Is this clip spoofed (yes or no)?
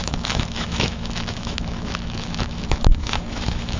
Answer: yes